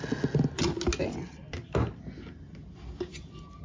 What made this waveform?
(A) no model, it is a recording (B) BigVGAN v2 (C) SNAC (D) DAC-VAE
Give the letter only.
A